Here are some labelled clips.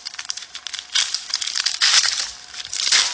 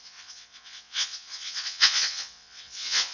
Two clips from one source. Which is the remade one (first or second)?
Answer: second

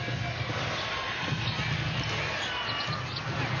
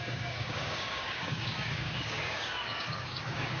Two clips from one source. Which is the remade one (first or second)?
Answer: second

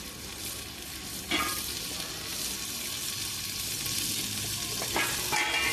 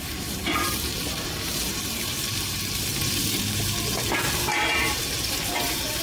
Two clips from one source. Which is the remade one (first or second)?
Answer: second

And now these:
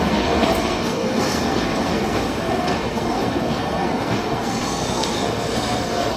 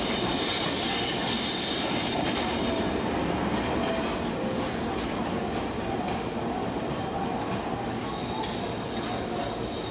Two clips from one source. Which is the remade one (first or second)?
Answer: first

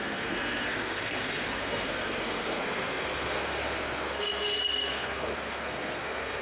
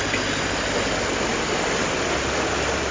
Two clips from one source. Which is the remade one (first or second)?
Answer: first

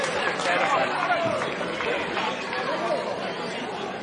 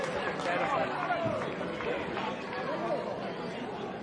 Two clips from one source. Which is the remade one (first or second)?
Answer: first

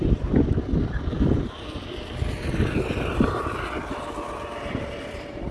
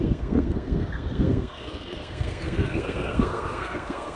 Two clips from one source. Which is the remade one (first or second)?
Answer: second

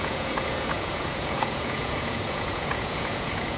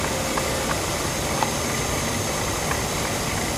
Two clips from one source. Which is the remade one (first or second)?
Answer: first